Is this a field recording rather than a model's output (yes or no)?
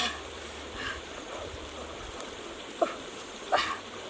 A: no